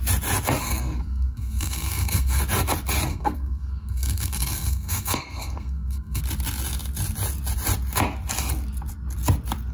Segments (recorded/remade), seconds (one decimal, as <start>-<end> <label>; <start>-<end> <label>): 0.0-0.6 recorded; 0.6-2.4 remade; 2.4-3.1 recorded; 3.1-6.2 remade; 6.2-9.7 recorded